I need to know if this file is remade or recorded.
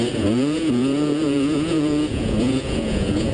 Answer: remade